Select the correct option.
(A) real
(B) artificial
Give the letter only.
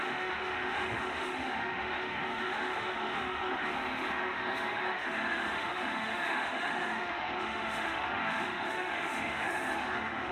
B